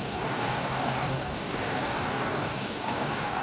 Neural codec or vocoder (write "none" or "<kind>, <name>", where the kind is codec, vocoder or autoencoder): codec, DAC